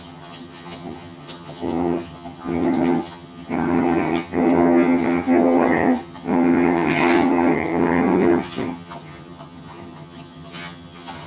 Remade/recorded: remade